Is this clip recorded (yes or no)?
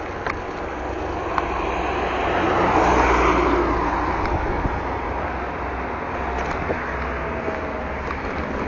yes